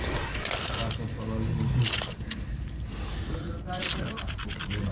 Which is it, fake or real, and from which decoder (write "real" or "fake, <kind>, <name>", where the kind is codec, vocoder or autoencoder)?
real